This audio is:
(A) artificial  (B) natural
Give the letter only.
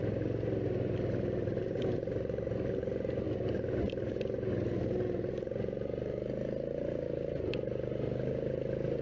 B